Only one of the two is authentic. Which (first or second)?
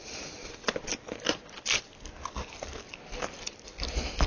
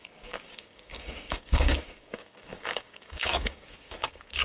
first